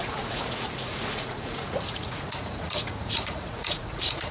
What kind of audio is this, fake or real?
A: fake